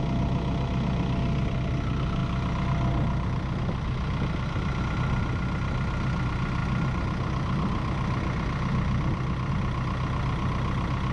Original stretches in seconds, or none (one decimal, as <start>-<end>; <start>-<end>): 0.0-11.1